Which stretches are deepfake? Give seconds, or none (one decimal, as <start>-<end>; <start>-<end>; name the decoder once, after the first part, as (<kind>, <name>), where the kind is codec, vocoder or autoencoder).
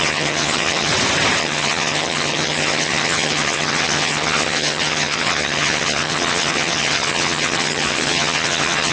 0.0-0.9 (vocoder, HiFi-GAN); 1.4-8.9